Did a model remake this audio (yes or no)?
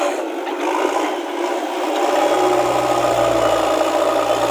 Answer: no